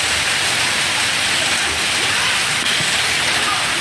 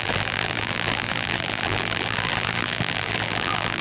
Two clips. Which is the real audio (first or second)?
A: first